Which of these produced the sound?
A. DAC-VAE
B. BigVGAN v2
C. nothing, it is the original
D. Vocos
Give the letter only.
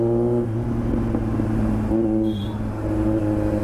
C